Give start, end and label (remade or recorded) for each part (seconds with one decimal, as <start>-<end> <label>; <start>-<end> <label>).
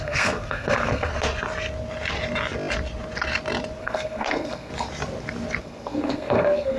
0.0-1.1 remade; 1.1-3.8 recorded; 3.8-4.7 remade; 4.7-5.6 recorded; 5.6-6.8 remade